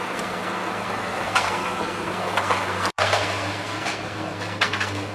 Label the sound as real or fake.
fake